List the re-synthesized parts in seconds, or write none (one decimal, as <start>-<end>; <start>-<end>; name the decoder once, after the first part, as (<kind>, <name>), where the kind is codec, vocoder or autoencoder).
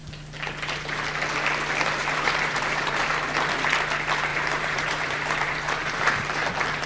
2.0-3.1 (vocoder, BigVGAN v2); 4.3-6.5